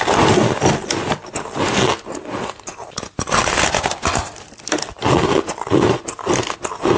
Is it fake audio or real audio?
real